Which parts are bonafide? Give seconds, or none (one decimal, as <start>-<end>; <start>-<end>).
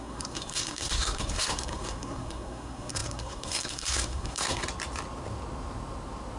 4.6-6.4